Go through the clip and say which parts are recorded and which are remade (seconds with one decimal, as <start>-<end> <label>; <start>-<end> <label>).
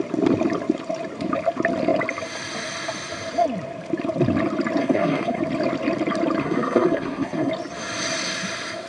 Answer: 0.0-4.8 recorded; 4.8-5.4 remade; 5.4-6.4 recorded; 6.4-7.5 remade; 7.5-8.9 recorded